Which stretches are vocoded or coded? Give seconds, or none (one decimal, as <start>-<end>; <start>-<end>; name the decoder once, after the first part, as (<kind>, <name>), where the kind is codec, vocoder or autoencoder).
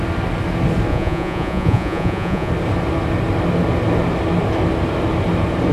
0.9-2.5 (vocoder, Vocos)